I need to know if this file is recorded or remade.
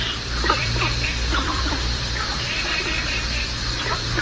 remade